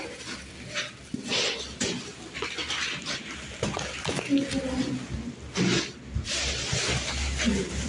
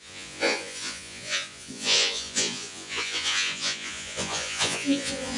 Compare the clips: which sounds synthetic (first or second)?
second